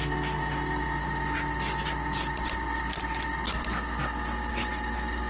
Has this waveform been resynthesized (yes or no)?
no